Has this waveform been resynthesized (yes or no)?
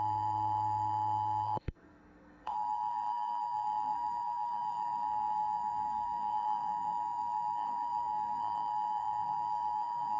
yes